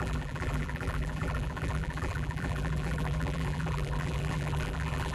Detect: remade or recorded remade